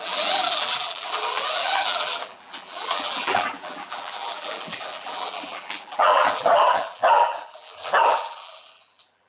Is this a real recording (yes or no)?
no